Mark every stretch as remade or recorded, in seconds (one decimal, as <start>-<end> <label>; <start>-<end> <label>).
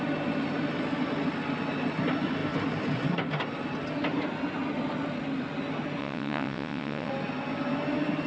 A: 0.0-6.0 recorded; 6.0-7.1 remade; 7.1-8.3 recorded